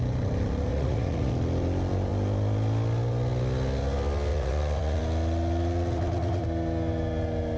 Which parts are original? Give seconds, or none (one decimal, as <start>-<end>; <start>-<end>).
0.0-0.7; 1.3-4.3; 5.0-7.6